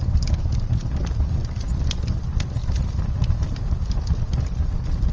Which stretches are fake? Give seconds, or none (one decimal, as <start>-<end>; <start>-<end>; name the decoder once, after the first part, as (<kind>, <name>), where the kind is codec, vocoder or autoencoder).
none